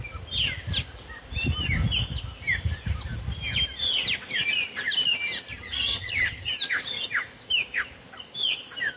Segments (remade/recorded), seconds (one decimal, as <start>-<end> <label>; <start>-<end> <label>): 0.0-5.5 recorded; 5.5-6.5 remade; 6.5-9.0 recorded